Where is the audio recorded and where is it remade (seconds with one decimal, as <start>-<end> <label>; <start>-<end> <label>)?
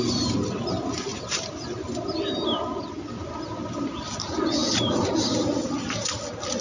0.0-6.6 recorded